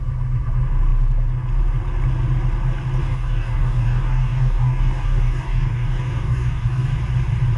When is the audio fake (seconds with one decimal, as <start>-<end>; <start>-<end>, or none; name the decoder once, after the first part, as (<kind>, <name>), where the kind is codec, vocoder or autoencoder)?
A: 3.0-7.0 (codec, DAC)